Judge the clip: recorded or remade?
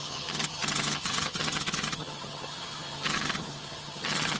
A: remade